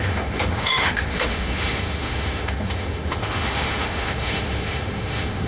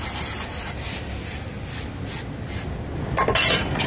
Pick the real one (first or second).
second